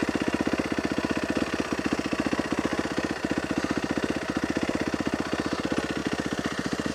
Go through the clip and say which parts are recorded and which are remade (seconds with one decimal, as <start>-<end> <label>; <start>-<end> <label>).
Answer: 0.0-1.4 remade; 1.4-2.7 recorded; 2.7-5.6 remade; 5.6-6.0 recorded; 6.0-6.9 remade